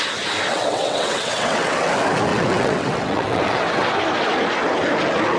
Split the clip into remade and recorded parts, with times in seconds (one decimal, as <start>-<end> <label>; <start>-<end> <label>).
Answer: 0.0-0.5 recorded; 0.5-1.9 remade; 1.9-2.3 recorded; 2.3-3.9 remade; 3.9-5.4 recorded